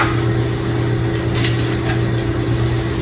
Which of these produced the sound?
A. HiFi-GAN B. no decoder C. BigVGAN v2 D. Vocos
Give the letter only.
B